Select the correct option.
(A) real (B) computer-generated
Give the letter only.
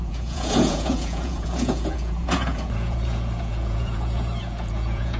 B